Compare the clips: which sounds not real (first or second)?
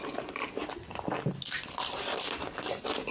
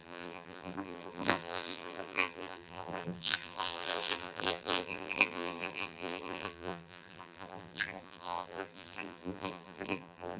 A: second